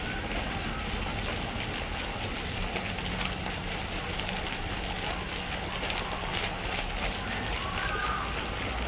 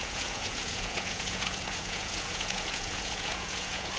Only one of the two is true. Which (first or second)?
first